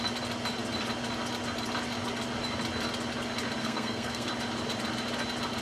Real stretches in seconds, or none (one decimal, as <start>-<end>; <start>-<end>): 0.0-3.6; 4.3-5.6